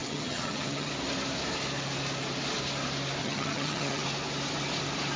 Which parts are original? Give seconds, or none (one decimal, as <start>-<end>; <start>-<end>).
0.9-3.2; 4.0-5.2